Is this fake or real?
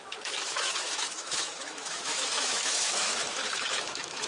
fake